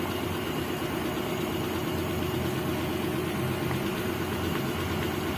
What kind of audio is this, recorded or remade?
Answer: recorded